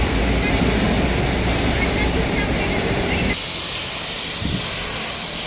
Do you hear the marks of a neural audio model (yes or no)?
no